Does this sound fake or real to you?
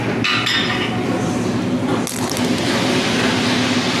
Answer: real